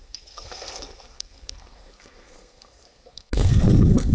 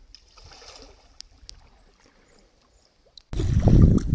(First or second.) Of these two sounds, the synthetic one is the first